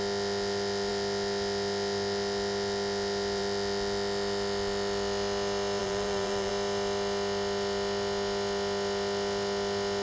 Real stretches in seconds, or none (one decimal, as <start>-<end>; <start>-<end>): 0.0-5.8; 6.5-10.0